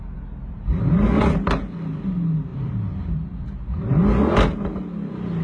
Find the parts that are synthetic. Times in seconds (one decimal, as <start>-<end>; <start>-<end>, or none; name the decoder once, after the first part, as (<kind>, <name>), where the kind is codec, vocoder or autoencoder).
2.5-3.8 (vocoder, BigVGAN v2)